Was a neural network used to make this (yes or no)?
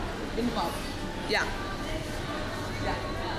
no